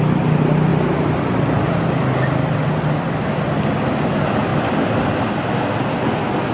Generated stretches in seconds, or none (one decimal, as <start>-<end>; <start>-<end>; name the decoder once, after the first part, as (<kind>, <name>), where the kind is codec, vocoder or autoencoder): none